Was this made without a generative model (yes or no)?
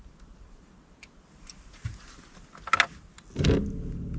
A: yes